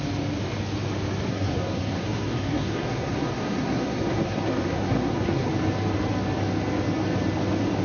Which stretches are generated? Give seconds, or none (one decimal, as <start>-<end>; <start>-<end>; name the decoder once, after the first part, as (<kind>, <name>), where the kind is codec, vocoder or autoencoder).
1.3-5.5 (codec, SNAC)